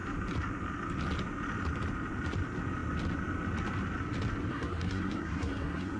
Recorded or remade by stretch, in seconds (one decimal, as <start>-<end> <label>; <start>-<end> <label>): 0.0-4.5 recorded; 4.5-6.0 remade